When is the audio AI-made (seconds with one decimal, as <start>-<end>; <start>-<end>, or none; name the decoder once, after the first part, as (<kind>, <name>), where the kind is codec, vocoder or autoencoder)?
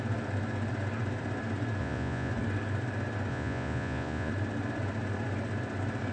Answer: 1.8-2.3 (vocoder, Vocos); 3.3-4.3